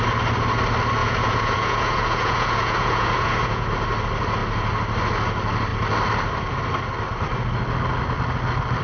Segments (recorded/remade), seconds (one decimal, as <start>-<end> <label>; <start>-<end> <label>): 0.0-1.0 recorded; 1.0-3.7 remade; 3.7-8.8 recorded